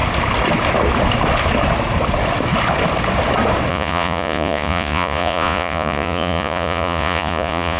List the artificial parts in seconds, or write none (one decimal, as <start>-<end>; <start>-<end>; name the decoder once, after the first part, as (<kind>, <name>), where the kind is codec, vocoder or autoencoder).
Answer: 3.7-7.8 (vocoder, Vocos)

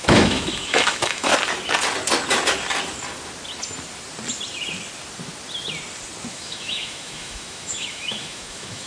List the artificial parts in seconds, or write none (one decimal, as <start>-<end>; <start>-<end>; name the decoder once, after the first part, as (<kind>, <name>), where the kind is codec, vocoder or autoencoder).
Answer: 0.0-1.3 (autoencoder, DAC-VAE); 6.3-8.9

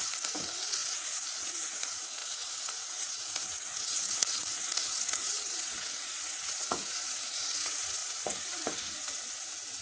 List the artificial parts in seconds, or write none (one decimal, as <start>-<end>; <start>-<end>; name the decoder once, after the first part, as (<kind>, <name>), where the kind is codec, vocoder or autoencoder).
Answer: 0.0-9.8 (vocoder, Vocos)